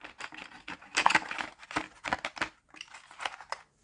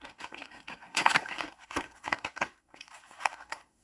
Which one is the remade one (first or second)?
second